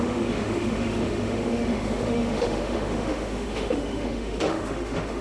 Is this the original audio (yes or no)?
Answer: no